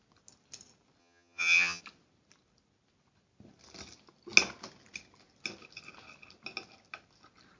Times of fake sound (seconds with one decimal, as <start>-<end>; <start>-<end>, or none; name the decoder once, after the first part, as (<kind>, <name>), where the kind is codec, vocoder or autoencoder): 1.0-1.8 (vocoder, HiFi-GAN)